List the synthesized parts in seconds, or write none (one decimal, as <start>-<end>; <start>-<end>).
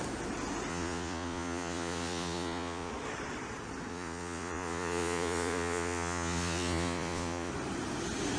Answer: 0.7-2.9; 3.9-7.5